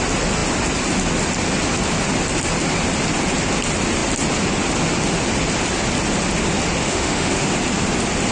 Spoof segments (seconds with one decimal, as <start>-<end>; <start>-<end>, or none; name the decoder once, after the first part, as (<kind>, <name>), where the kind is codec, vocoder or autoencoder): 6.8-7.5 (autoencoder, DAC-VAE)